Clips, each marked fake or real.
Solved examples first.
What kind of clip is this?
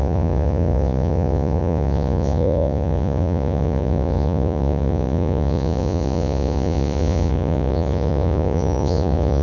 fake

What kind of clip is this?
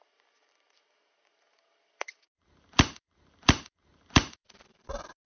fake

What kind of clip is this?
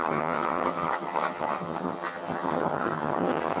fake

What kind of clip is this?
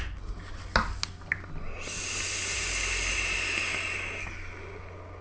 real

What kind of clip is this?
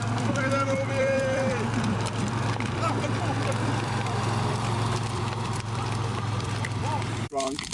fake